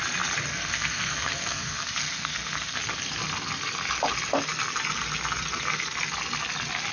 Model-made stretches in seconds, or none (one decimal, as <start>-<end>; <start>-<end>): 0.5-2.8